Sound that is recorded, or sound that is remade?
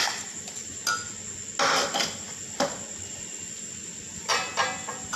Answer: recorded